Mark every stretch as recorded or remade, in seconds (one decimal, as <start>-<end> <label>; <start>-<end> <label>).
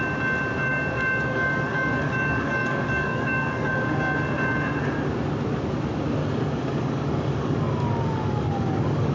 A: 0.0-0.7 recorded; 0.7-3.7 remade; 3.7-6.2 recorded; 6.2-9.1 remade